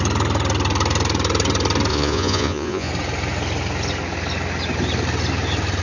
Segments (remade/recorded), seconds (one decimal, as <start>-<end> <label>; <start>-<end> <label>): 0.0-1.9 recorded; 1.9-2.9 remade; 2.9-5.8 recorded

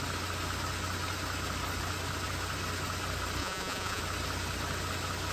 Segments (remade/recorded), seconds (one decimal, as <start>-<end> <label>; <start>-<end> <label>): 0.0-3.4 recorded; 3.4-4.0 remade; 4.0-5.3 recorded

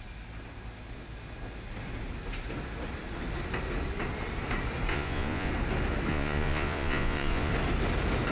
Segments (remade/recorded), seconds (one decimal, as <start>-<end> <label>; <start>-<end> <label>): 0.0-4.9 recorded; 4.9-5.5 remade; 5.5-6.1 recorded; 6.1-7.5 remade; 7.5-8.3 recorded

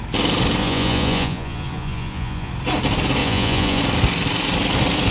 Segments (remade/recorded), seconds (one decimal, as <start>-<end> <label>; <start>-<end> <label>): 0.0-0.6 recorded; 0.6-2.5 remade; 2.5-3.2 recorded; 3.2-3.8 remade; 3.8-5.1 recorded

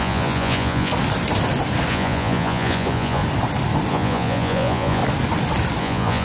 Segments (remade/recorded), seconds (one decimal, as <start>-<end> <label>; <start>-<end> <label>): 0.0-0.9 remade; 0.9-1.9 recorded; 1.9-3.2 remade; 3.2-3.9 recorded; 3.9-5.0 remade; 5.0-5.8 recorded; 5.8-6.2 remade

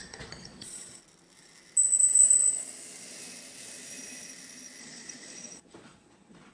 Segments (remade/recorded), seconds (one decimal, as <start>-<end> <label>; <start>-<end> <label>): 0.0-1.0 remade; 1.0-4.8 recorded; 4.8-6.5 remade

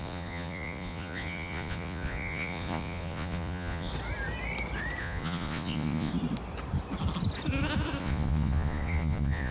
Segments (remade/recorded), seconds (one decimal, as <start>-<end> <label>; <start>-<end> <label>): 0.0-3.9 remade; 3.9-5.0 recorded; 5.0-6.1 remade; 6.1-8.0 recorded; 8.0-9.5 remade

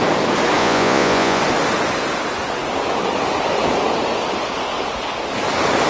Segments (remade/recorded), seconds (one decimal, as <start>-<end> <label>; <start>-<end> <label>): 0.0-0.6 recorded; 0.6-1.4 remade; 1.4-5.9 recorded